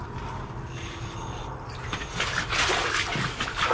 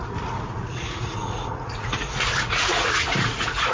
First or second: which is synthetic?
second